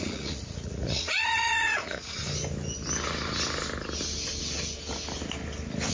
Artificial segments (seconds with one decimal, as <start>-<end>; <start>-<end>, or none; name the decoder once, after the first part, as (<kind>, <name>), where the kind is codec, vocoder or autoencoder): 0.0-2.2 (vocoder, Vocos)